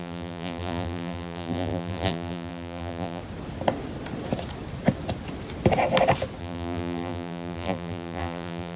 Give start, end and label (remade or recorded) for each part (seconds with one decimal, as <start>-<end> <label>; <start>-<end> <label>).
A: 0.0-3.2 remade; 3.2-6.4 recorded; 6.4-8.8 remade